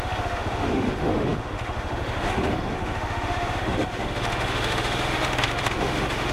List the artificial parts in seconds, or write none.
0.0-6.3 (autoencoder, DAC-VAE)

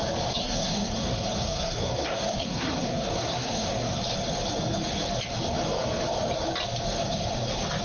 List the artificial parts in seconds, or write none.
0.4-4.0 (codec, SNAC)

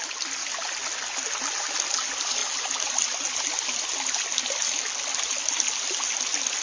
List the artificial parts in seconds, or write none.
none

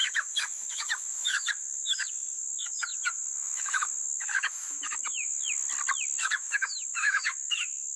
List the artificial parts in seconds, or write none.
0.0-5.6 (autoencoder, DAC-VAE); 6.2-8.0

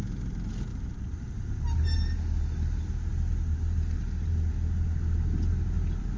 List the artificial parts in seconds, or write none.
0.7-1.4 (vocoder, BigVGAN v2)

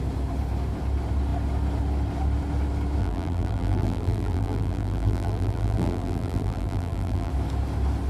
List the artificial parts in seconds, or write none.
3.0-7.3 (vocoder, BigVGAN v2)

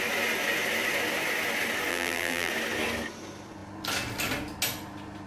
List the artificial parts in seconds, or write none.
1.9-2.5 (vocoder, BigVGAN v2)